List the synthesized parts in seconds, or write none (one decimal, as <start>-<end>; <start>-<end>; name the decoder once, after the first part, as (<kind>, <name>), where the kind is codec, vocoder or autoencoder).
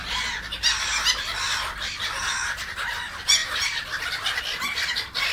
1.1-5.3 (vocoder, BigVGAN v2)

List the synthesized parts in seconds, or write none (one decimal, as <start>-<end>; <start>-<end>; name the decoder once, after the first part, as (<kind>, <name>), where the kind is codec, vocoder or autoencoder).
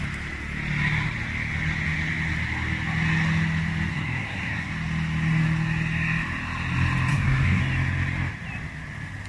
3.9-4.7 (codec, SNAC); 7.1-7.6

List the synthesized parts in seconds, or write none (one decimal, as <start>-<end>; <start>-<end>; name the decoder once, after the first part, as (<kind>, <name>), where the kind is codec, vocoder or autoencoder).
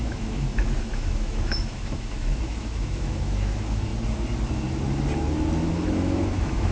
0.0-3.9 (autoencoder, DAC-VAE); 5.7-6.7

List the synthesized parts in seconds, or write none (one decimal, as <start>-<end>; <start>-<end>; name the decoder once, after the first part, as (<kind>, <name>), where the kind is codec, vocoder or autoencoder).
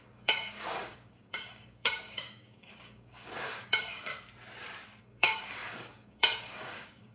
0.0-4.1 (codec, DAC); 5.0-7.1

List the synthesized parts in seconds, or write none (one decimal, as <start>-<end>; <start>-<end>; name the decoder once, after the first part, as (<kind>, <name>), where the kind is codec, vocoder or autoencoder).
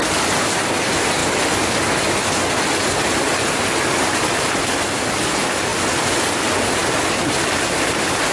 none